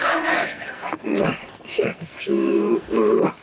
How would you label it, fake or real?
fake